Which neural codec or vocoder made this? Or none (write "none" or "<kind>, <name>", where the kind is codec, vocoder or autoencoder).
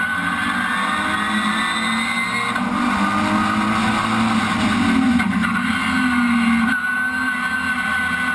none